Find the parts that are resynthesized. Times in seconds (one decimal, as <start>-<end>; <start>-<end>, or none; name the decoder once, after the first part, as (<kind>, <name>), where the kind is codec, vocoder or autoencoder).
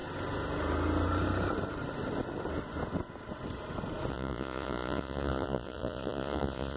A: 4.1-6.8 (vocoder, Vocos)